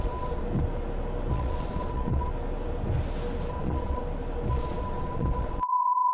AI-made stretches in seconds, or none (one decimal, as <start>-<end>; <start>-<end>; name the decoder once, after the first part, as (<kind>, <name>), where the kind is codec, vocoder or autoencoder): 0.0-0.4 (vocoder, Vocos); 1.3-2.3; 3.5-4.0; 4.5-6.1